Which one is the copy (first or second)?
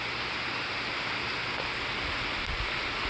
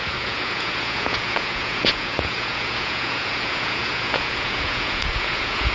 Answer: second